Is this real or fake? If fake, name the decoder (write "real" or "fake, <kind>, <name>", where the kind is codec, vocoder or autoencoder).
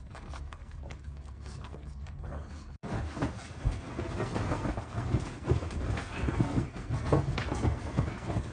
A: fake, codec, SNAC